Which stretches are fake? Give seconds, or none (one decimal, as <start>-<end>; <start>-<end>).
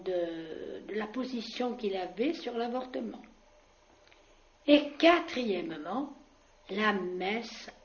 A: none